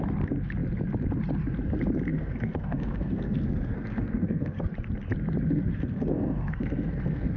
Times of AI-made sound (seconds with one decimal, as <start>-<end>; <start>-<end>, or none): 2.1-4.6; 5.5-7.4